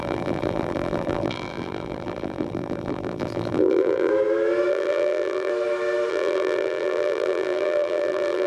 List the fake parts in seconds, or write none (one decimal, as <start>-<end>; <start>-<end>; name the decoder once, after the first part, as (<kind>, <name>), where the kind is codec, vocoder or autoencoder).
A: 0.0-4.1 (vocoder, BigVGAN v2); 4.7-5.5; 6.1-8.5